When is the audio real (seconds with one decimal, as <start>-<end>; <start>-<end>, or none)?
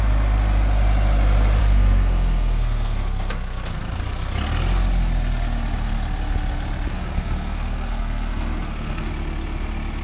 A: 0.0-1.6; 4.0-6.9; 9.1-10.0